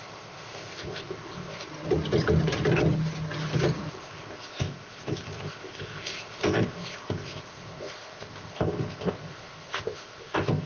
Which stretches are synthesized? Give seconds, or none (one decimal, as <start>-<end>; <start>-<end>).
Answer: 0.0-1.7; 3.9-10.7